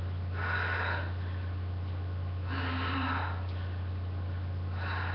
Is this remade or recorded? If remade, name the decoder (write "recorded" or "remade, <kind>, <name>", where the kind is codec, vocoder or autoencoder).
recorded